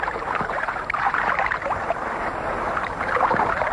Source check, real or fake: real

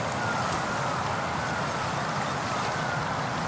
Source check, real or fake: real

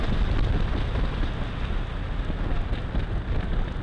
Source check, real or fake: real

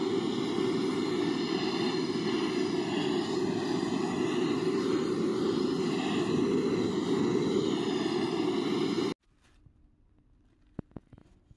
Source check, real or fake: real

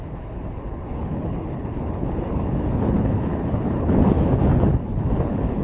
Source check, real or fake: fake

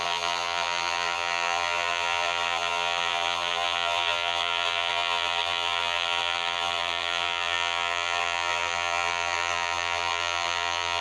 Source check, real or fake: fake